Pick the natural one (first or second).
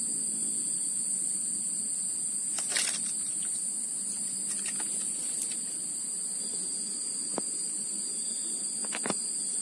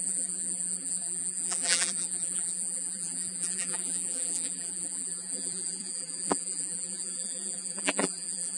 first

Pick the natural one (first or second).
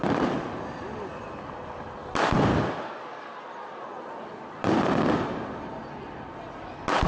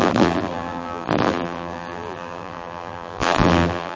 first